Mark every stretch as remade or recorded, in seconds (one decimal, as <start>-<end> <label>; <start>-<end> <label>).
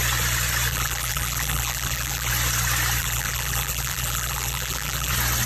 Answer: 0.0-0.7 recorded; 0.7-2.3 remade; 2.3-3.0 recorded; 3.0-5.1 remade; 5.1-5.5 recorded